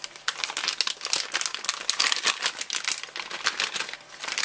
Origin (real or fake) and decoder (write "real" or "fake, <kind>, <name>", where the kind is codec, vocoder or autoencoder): real